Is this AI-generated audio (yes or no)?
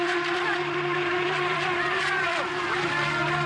yes